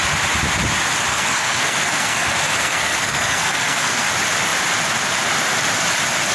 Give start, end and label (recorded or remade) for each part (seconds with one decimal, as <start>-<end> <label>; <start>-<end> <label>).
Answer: 0.0-1.1 recorded; 1.1-4.1 remade; 4.1-6.3 recorded